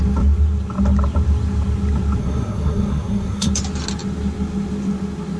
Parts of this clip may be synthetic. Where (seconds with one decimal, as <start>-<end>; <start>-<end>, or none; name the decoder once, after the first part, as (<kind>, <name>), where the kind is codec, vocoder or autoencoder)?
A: 2.2-3.5 (codec, SNAC)